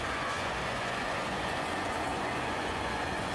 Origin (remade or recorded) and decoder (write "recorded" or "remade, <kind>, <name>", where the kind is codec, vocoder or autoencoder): remade, vocoder, Vocos